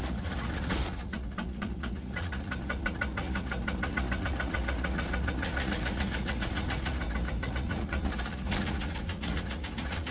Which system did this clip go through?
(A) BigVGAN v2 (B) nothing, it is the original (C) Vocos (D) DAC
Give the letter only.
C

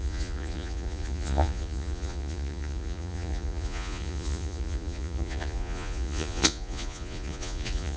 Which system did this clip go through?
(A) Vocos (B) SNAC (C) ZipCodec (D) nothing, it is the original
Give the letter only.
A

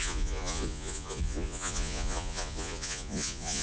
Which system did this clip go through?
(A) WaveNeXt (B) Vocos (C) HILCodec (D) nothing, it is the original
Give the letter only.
B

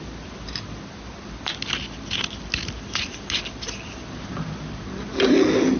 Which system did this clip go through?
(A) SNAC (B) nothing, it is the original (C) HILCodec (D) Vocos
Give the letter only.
B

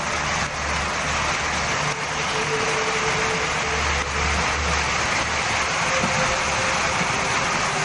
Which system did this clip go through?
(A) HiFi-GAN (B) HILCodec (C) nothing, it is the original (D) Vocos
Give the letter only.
C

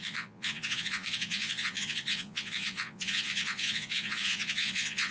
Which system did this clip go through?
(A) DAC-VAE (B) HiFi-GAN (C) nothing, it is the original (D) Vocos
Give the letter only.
D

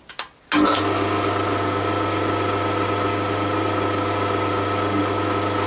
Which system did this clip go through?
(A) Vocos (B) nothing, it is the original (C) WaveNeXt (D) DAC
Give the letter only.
B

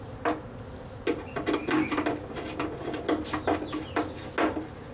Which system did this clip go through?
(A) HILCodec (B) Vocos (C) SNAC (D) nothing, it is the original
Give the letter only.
D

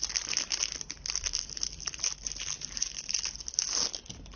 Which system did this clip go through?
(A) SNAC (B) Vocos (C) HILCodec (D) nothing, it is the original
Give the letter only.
D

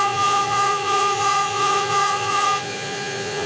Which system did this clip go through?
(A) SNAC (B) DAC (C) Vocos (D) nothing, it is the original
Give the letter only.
C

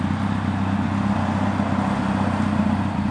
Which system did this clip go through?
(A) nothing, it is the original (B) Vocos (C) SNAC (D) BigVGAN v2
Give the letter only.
A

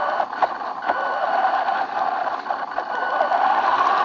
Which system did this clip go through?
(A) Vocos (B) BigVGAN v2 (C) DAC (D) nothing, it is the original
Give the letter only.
D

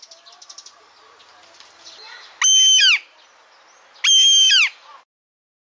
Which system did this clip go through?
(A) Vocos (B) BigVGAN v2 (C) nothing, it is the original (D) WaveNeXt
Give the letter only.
C